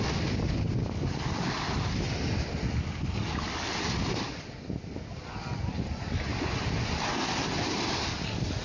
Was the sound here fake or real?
real